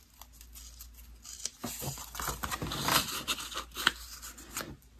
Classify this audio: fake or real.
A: real